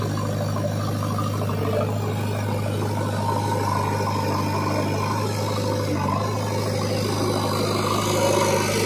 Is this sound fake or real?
real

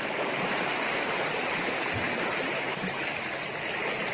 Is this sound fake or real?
real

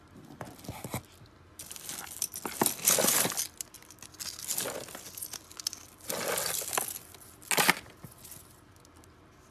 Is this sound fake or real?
real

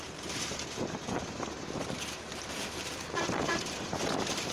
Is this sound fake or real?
fake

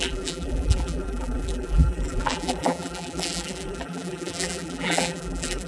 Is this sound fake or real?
fake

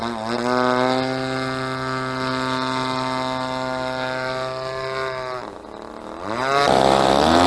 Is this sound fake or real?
real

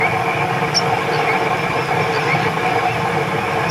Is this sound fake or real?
real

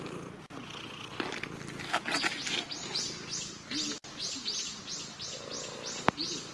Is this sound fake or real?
real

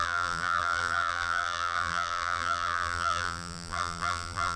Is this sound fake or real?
fake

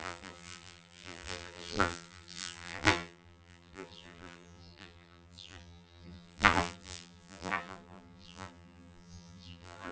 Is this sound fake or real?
fake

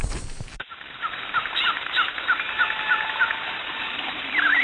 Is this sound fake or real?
fake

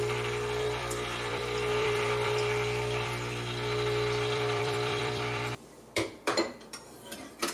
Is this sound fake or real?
fake